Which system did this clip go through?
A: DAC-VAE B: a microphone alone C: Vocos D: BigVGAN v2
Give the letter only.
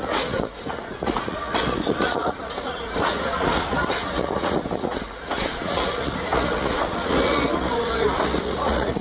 C